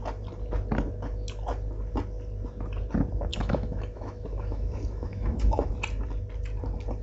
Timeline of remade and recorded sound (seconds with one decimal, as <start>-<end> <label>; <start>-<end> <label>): 0.0-3.3 recorded; 3.3-5.7 remade; 5.7-7.0 recorded